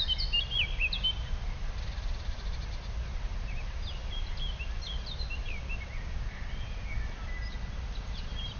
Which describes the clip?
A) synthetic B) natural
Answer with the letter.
B